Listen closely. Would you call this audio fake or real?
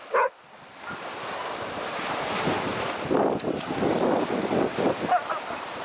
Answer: real